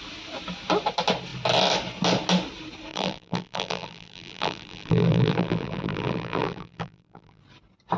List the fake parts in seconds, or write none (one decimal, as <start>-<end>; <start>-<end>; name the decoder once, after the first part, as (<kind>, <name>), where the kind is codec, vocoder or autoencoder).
2.9-7.4 (vocoder, BigVGAN v2)